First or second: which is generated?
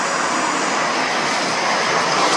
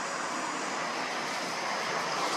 second